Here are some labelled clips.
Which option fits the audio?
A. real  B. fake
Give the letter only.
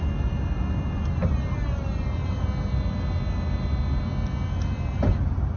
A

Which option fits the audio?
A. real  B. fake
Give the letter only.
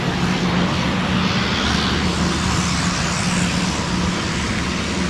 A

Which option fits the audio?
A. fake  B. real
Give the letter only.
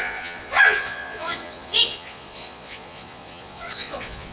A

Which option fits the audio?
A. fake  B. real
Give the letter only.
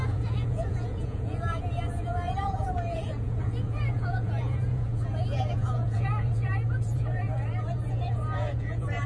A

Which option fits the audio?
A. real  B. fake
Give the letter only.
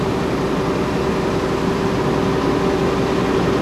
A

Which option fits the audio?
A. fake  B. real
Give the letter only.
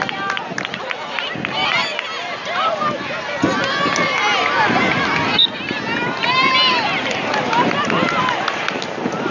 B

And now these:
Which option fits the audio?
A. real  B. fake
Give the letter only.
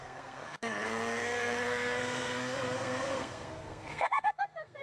B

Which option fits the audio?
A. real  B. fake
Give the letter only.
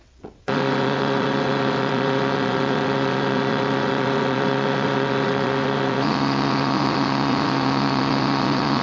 B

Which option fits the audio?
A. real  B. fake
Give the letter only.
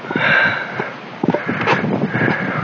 A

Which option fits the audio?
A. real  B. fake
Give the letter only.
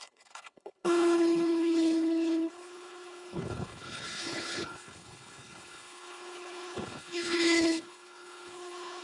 B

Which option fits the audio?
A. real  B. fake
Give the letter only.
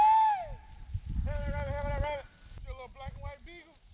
A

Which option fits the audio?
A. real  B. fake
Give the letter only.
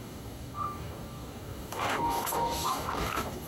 B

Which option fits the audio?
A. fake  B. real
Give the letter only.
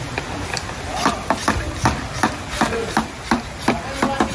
B